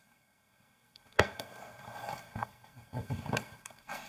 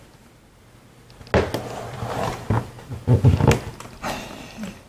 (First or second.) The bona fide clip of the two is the second